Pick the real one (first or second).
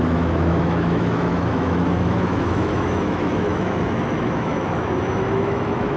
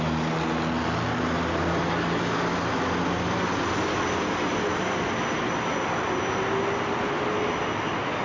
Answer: second